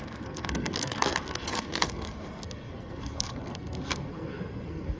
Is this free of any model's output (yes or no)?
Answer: no